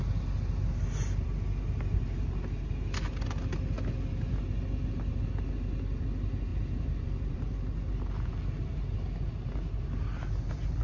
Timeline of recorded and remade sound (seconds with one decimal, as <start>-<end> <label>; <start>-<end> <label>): 0.0-6.5 recorded; 6.5-7.4 remade; 7.4-10.8 recorded